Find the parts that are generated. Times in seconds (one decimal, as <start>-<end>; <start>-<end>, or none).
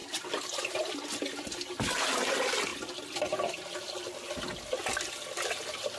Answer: none